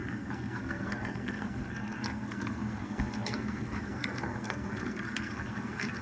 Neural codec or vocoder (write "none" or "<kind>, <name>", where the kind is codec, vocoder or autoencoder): codec, SNAC